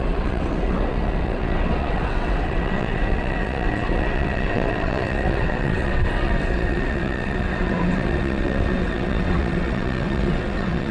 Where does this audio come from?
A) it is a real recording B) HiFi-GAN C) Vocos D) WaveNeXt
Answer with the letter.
D